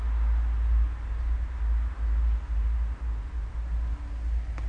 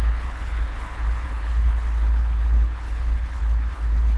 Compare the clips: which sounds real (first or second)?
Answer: first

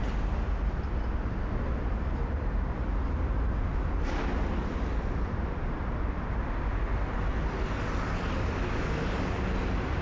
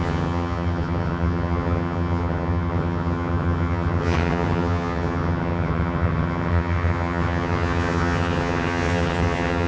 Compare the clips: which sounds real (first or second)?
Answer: first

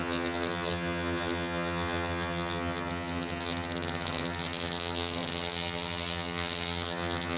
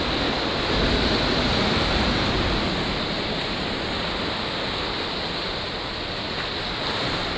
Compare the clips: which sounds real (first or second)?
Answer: second